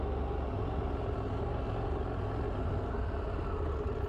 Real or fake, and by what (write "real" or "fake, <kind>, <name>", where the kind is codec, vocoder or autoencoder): real